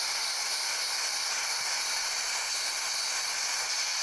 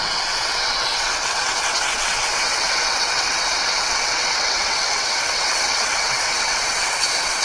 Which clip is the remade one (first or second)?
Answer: second